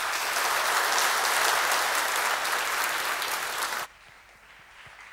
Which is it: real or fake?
real